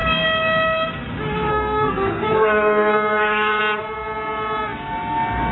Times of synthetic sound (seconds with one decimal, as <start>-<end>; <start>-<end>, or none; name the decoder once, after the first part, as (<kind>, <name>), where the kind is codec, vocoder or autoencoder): 1.5-3.6 (codec, SNAC)